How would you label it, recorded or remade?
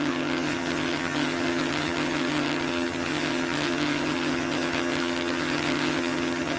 remade